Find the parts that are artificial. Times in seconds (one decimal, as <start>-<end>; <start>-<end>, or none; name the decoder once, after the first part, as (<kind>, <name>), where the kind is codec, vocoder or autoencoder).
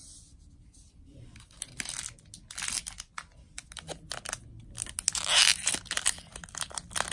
none